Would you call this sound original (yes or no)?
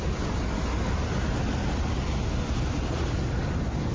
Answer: yes